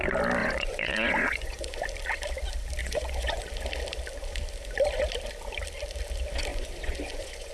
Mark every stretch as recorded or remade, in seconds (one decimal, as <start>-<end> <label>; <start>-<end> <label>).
0.0-0.4 recorded; 0.4-1.8 remade; 1.8-2.8 recorded; 2.8-3.4 remade; 3.4-6.5 recorded; 6.5-7.5 remade